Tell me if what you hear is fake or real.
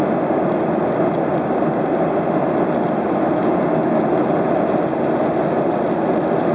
real